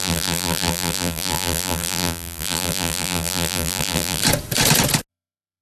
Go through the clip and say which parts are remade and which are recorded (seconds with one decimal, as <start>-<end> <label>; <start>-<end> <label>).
0.0-4.2 remade; 4.2-5.1 recorded; 5.1-5.6 remade